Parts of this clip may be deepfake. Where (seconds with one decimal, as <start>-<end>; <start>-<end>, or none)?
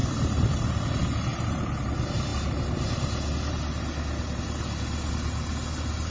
1.3-1.9